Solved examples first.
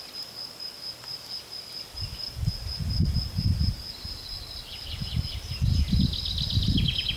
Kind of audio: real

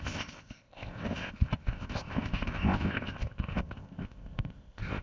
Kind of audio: fake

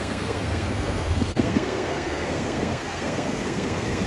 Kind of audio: fake